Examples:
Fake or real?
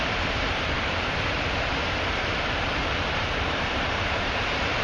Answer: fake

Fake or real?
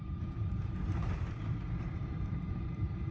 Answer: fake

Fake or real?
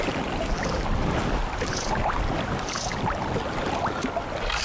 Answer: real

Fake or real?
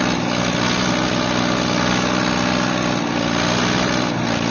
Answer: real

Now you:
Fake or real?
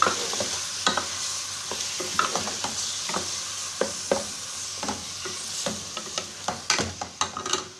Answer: real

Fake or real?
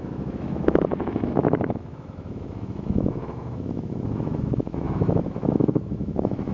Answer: fake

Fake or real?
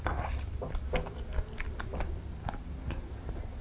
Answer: real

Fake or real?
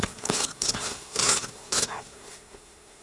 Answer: fake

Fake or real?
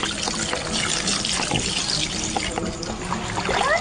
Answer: real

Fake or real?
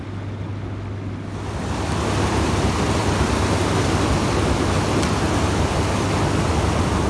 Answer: real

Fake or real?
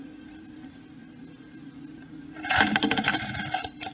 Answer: real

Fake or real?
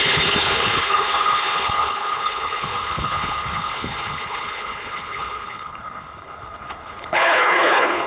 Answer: fake